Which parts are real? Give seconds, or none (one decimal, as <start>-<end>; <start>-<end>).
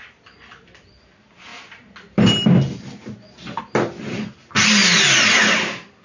0.0-6.0